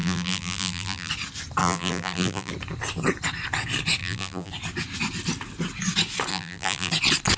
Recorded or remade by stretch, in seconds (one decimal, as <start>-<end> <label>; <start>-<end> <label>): 0.0-1.1 remade; 1.1-1.6 recorded; 1.6-2.5 remade; 2.5-4.0 recorded; 4.0-4.5 remade; 4.5-6.3 recorded; 6.3-6.9 remade; 6.9-7.4 recorded